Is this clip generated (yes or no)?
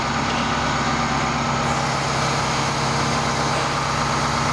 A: no